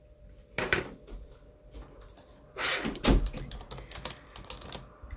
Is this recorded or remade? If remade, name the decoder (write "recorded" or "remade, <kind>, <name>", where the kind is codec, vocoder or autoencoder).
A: recorded